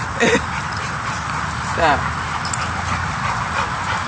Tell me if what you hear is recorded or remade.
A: recorded